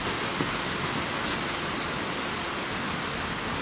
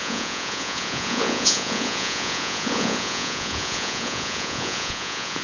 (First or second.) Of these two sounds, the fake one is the second